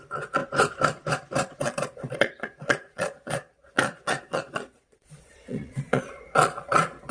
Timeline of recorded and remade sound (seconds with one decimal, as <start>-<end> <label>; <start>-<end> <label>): 0.0-0.4 remade; 0.4-1.6 recorded; 1.6-7.1 remade